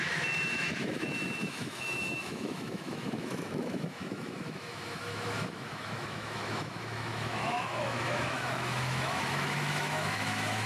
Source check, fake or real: fake